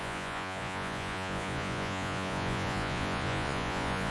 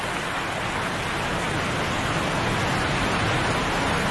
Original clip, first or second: second